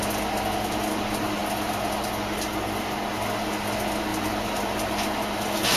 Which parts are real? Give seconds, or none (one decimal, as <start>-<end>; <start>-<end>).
0.0-4.1; 4.9-5.8